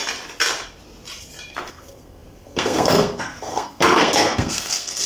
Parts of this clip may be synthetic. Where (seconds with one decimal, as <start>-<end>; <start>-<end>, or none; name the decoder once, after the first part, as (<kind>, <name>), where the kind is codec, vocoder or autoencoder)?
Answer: 1.7-5.1 (codec, SNAC)